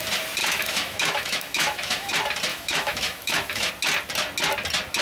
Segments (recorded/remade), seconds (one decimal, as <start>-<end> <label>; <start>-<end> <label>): 0.0-0.4 recorded; 0.4-2.1 remade; 2.1-2.5 recorded; 2.5-3.7 remade; 3.7-5.0 recorded

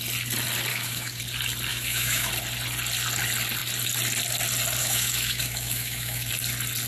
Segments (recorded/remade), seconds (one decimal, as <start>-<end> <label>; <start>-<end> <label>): 0.0-0.7 recorded; 0.7-1.2 remade; 1.2-1.7 recorded; 1.7-2.3 remade; 2.3-4.8 recorded; 4.8-6.3 remade; 6.3-6.9 recorded

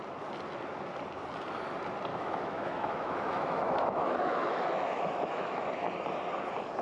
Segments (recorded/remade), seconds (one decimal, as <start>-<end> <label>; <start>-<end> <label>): 0.0-2.1 recorded; 2.1-5.6 remade; 5.6-6.8 recorded

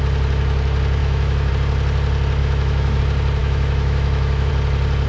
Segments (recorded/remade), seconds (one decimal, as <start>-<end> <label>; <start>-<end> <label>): 0.0-1.0 recorded; 1.0-1.5 remade; 1.5-2.4 recorded; 2.4-3.0 remade; 3.0-3.4 recorded; 3.4-4.5 remade; 4.5-5.1 recorded